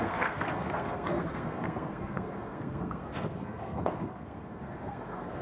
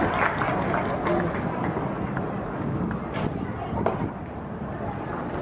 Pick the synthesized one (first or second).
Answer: first